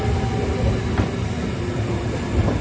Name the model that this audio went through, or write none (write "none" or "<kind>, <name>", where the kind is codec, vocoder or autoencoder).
none